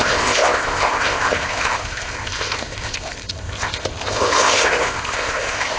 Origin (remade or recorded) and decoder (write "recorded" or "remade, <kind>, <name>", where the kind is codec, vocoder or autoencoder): remade, codec, ZipCodec